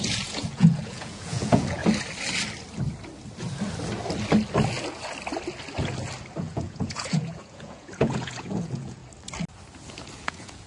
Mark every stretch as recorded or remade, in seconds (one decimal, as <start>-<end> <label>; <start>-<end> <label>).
0.0-1.8 remade; 1.8-6.4 recorded; 6.4-9.0 remade; 9.0-10.2 recorded; 10.2-10.7 remade